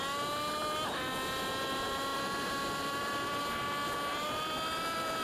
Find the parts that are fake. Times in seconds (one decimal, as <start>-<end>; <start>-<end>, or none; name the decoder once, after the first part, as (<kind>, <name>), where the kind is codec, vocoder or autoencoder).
2.1-3.4 (vocoder, BigVGAN v2); 4.1-5.2